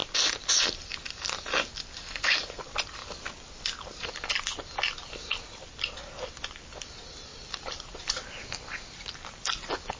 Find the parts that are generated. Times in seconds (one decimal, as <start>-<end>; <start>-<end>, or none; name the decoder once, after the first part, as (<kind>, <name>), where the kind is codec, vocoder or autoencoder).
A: 3.0-4.1 (vocoder, BigVGAN v2); 7.3-10.0